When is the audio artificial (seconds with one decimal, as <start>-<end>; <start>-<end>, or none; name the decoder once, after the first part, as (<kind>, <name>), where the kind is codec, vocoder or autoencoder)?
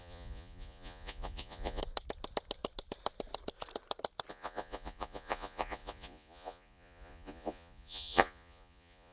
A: 0.0-1.8 (vocoder, Vocos); 4.3-9.1